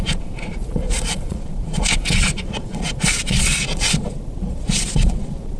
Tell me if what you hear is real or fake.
fake